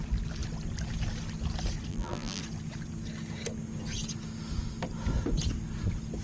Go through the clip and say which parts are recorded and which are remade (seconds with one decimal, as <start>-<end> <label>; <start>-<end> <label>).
0.0-1.9 recorded; 1.9-2.4 remade; 2.4-6.2 recorded